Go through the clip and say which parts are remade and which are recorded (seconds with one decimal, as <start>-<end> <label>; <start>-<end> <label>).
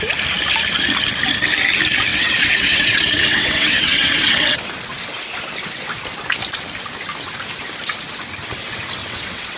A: 0.0-2.1 recorded; 2.1-4.6 remade; 4.6-9.0 recorded; 9.0-9.6 remade